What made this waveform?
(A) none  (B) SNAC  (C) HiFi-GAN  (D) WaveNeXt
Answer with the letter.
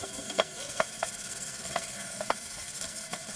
B